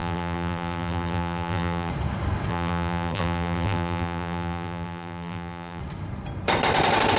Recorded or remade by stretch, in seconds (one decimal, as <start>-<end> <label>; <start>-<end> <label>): 0.0-1.9 remade; 1.9-2.5 recorded; 2.5-5.8 remade; 5.8-7.2 recorded